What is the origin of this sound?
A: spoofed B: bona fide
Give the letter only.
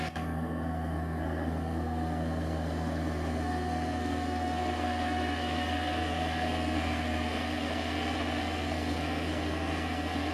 A